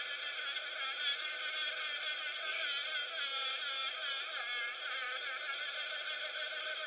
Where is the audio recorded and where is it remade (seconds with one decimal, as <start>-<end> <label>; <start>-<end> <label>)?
0.0-6.9 recorded